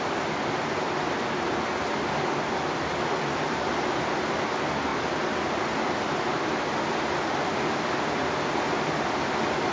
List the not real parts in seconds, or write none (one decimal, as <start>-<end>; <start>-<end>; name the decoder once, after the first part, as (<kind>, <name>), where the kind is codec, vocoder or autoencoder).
none